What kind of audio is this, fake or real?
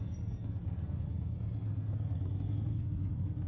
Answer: fake